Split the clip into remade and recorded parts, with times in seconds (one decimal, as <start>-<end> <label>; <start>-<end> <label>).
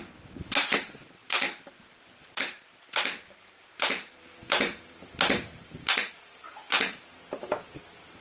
0.0-8.2 remade